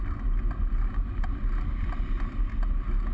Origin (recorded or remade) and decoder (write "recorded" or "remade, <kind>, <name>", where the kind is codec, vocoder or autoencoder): recorded